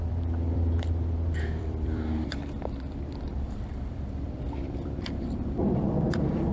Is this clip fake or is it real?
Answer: fake